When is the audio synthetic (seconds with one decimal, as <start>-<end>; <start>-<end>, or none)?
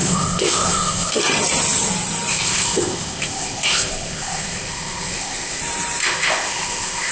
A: 0.0-1.2; 2.3-5.6; 6.0-7.1